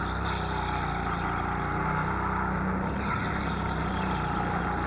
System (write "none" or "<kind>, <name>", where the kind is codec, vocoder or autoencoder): none